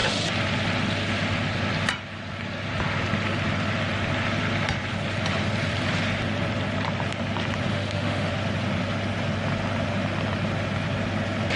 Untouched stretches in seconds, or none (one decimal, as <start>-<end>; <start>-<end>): 0.0-7.7; 8.3-11.6